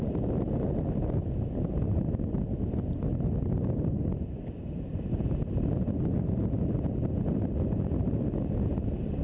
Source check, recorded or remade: recorded